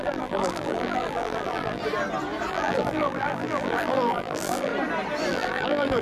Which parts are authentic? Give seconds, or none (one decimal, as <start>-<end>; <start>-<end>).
1.8-2.5; 4.7-5.3

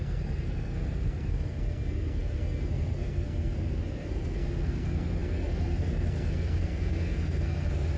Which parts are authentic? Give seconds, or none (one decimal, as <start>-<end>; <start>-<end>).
none